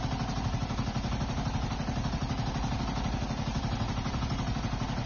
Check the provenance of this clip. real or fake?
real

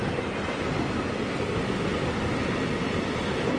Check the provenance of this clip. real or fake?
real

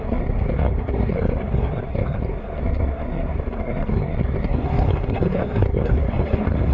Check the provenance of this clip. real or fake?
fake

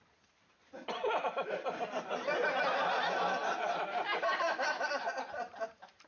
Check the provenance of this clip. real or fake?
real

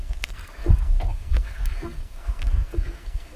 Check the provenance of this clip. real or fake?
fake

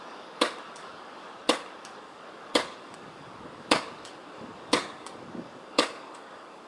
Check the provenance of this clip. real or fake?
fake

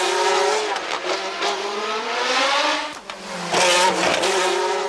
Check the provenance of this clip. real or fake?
real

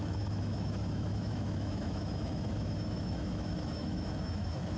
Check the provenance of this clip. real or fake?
fake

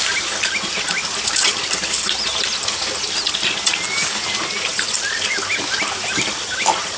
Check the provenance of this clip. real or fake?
real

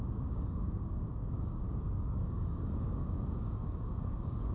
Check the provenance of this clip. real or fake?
fake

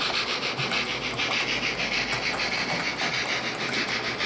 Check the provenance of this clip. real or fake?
real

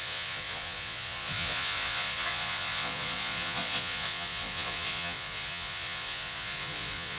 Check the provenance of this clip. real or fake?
fake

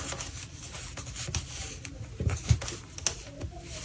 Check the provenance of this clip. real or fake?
real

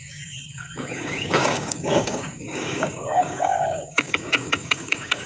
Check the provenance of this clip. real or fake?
fake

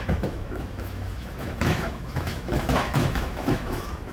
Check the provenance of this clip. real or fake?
fake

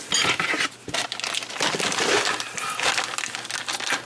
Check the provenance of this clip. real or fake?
real